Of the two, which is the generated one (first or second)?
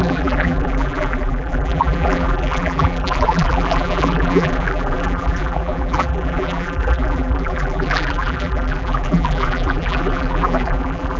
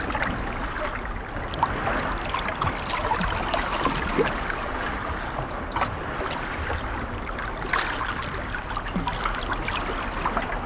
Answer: first